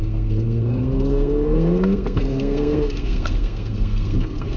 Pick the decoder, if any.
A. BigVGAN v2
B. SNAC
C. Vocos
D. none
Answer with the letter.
B